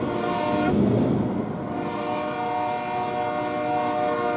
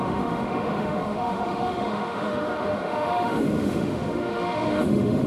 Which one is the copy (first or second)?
second